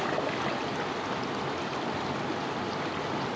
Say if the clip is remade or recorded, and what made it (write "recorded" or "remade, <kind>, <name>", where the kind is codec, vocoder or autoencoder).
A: recorded